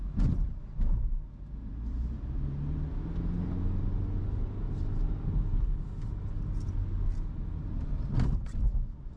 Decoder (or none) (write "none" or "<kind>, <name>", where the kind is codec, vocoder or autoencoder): none